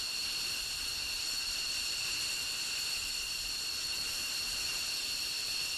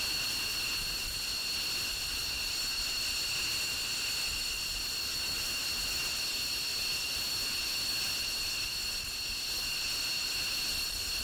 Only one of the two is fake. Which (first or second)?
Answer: first